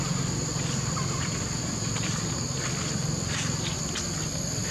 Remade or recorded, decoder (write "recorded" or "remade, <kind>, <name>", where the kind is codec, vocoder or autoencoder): recorded